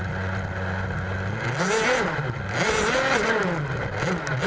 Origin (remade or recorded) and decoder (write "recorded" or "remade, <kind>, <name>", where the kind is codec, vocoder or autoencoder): recorded